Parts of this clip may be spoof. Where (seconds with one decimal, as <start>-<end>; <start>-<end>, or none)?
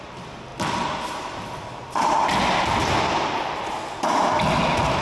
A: none